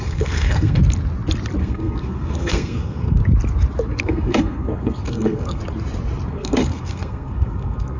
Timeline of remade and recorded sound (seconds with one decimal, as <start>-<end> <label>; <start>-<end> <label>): 0.0-0.8 remade; 0.8-1.6 recorded; 1.6-3.2 remade; 3.2-4.0 recorded; 4.0-5.6 remade; 5.6-6.3 recorded; 6.3-8.0 remade